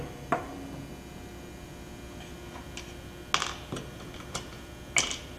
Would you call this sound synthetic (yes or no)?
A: no